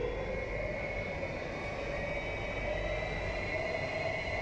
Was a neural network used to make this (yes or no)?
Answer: no